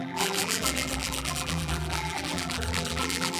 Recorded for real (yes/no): no